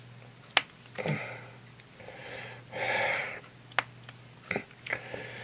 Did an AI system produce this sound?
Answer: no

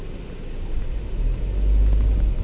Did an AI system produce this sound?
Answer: no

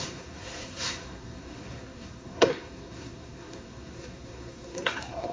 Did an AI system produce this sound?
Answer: yes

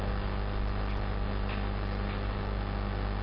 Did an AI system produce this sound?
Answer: no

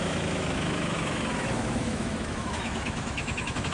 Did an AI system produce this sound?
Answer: yes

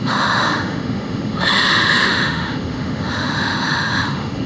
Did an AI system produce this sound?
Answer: yes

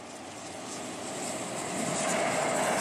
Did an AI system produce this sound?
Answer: no